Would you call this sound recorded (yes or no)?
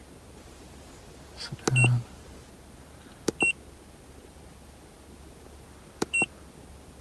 yes